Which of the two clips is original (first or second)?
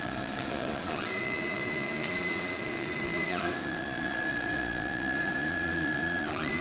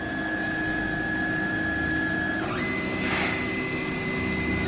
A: second